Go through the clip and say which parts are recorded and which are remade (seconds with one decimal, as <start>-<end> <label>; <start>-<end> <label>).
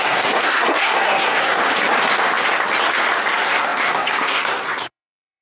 0.0-1.6 remade; 1.6-3.3 recorded; 3.3-5.4 remade